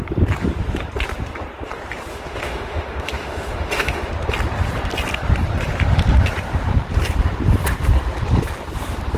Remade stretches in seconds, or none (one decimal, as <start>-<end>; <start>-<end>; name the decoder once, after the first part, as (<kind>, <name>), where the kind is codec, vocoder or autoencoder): 2.1-4.1 (autoencoder, DAC-VAE)